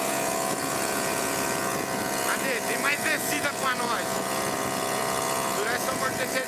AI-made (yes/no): yes